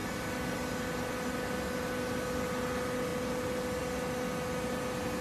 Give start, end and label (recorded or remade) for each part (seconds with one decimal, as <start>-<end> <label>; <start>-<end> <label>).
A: 0.0-5.2 recorded